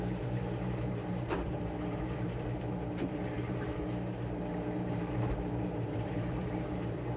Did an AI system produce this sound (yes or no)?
yes